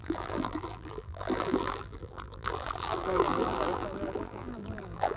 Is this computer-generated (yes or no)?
yes